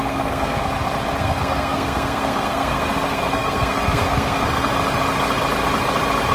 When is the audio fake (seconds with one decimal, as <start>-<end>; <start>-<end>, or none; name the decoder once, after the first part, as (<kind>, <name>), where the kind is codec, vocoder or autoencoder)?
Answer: 0.0-0.6 (codec, SNAC); 1.2-4.7